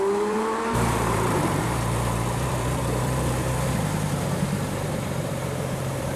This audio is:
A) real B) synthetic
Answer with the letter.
B